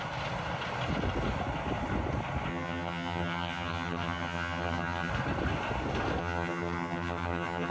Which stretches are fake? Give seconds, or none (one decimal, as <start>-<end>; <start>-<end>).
2.5-5.1; 6.2-7.7